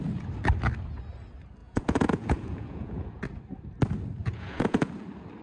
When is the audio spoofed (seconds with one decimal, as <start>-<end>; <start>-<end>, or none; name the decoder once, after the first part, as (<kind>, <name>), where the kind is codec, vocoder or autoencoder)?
1.6-3.2 (vocoder, Vocos); 4.2-4.9